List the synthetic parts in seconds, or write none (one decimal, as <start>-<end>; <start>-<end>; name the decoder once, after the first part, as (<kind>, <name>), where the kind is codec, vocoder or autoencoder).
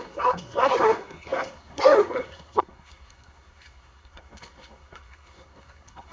0.0-6.1 (codec, SNAC)